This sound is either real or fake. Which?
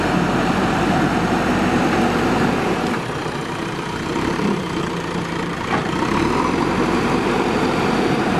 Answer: fake